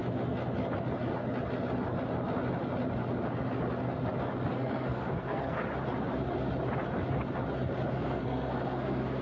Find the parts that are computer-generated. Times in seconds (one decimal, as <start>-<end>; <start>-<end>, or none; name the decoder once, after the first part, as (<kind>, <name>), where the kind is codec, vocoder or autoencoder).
4.5-5.6 (codec, SNAC); 7.9-9.2